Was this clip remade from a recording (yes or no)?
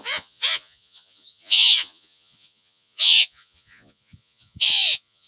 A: yes